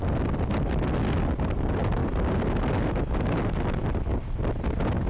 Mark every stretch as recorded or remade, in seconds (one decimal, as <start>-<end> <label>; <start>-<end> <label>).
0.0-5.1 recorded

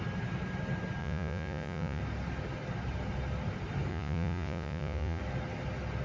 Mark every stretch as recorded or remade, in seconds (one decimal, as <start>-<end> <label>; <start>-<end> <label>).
0.0-1.0 recorded; 1.0-2.0 remade; 2.0-3.9 recorded; 3.9-5.2 remade; 5.2-6.0 recorded

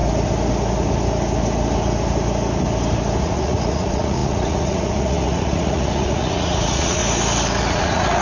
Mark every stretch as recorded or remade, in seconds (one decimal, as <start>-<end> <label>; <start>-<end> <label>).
0.0-3.2 recorded; 3.2-7.0 remade; 7.0-7.7 recorded; 7.7-8.2 remade